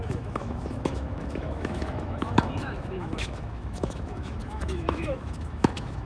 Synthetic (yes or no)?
yes